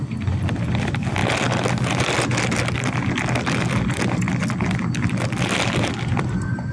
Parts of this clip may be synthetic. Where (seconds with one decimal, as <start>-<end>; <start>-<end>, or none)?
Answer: none